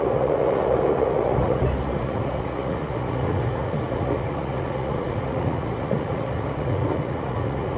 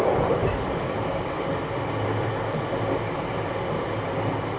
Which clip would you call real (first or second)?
second